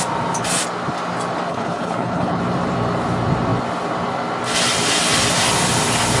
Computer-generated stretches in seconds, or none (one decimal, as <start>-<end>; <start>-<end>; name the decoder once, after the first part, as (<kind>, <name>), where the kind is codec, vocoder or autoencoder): 1.5-2.4 (codec, HILCodec)